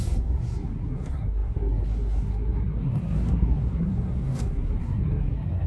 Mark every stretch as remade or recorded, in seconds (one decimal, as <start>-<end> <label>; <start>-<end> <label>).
0.0-5.7 remade